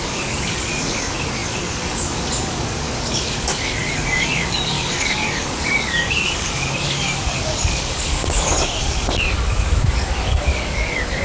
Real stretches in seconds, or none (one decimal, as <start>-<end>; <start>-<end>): none